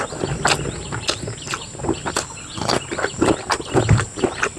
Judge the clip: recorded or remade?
recorded